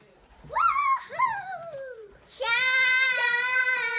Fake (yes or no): yes